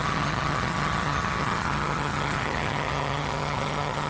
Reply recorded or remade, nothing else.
remade